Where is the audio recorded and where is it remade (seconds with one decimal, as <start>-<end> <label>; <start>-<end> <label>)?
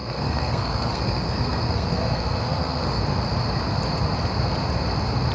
0.0-3.0 remade; 3.0-5.3 recorded